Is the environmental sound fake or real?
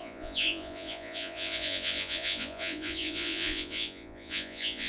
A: fake